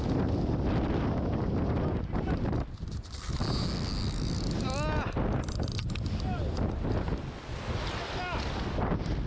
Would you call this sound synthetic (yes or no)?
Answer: no